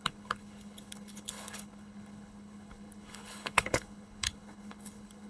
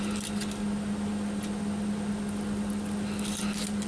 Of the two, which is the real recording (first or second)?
second